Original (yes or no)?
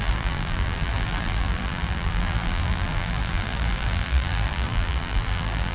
no